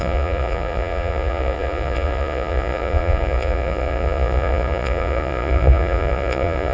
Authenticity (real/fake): fake